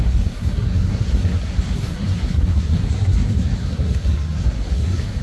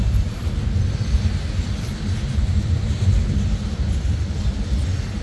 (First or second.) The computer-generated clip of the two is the first